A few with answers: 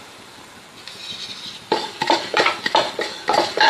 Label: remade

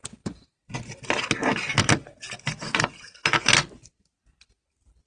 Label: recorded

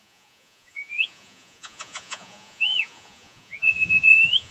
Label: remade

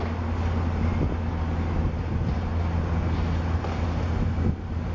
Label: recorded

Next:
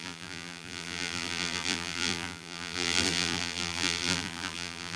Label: remade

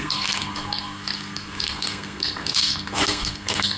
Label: remade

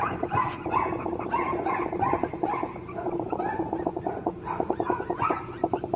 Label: remade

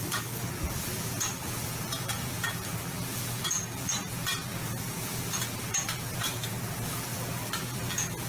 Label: remade